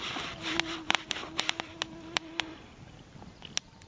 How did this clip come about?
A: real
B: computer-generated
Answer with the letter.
A